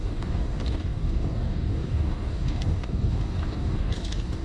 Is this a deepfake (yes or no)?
yes